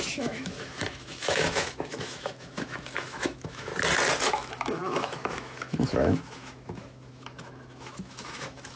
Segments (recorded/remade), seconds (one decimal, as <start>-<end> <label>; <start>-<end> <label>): 0.0-3.7 remade; 3.7-4.3 recorded; 4.3-8.8 remade